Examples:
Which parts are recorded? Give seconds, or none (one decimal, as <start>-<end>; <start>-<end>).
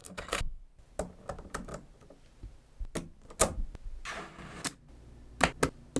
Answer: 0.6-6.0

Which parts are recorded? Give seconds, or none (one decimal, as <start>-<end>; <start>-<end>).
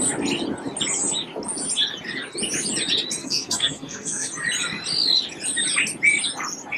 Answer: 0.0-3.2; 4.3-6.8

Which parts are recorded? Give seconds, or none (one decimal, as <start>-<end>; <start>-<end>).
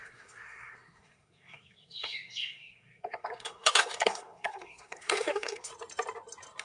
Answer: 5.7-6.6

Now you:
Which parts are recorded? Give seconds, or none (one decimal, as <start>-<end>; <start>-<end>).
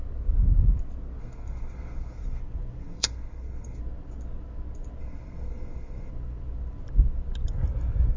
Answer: 0.0-1.2; 2.4-2.8; 3.8-5.0; 6.1-8.2